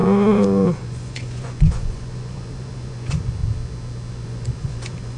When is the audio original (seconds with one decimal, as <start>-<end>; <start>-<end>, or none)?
3.4-4.1